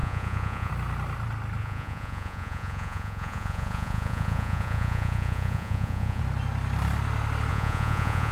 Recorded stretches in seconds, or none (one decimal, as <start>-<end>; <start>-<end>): 0.7-1.6; 6.2-7.5